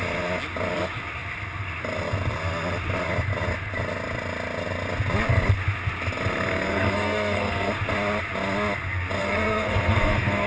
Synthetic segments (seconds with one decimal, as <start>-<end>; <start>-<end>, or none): 6.7-7.7; 9.2-10.5

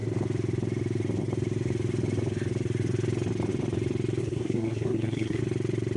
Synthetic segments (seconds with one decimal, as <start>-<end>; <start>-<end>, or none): 4.2-5.4

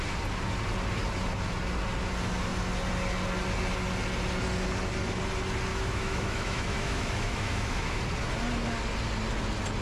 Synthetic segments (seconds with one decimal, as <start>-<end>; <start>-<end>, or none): 5.7-8.0

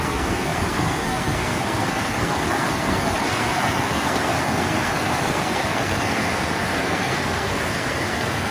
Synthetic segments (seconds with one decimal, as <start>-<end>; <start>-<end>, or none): 0.0-8.5

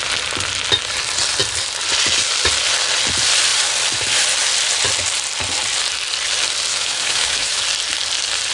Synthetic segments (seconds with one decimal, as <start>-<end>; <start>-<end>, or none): 6.7-7.6

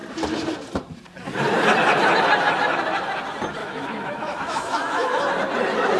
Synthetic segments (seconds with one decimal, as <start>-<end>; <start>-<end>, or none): 3.6-5.2

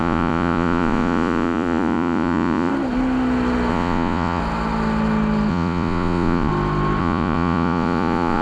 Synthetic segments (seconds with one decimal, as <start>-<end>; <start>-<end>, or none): 0.0-2.7; 3.7-4.4; 5.5-6.5; 7.0-8.4

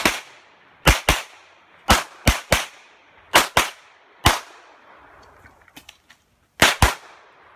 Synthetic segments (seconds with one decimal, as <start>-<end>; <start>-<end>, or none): none